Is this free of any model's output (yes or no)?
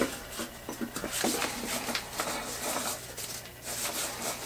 yes